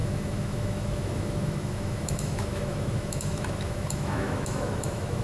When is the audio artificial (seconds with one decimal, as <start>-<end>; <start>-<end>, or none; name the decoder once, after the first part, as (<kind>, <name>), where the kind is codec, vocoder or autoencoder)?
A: 0.0-5.2 (autoencoder, DAC-VAE)